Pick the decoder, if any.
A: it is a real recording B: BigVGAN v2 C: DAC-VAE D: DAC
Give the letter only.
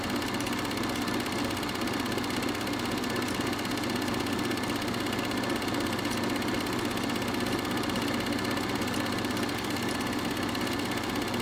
A